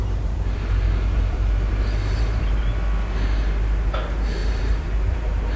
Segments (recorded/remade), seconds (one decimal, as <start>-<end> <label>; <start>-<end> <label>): 0.0-2.6 remade; 2.6-4.4 recorded; 4.4-5.6 remade